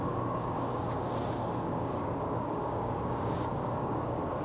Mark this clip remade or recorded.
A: remade